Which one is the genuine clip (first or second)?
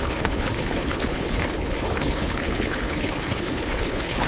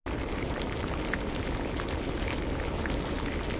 second